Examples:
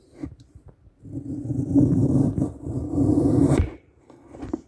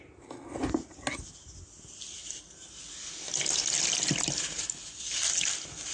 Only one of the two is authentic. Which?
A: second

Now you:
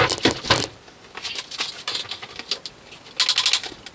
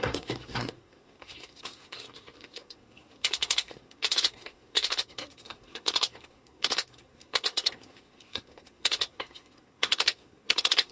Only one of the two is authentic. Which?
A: first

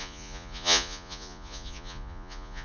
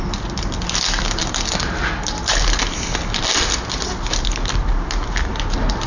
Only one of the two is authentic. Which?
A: second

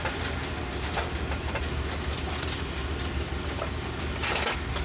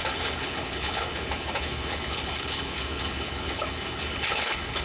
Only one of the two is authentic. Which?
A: first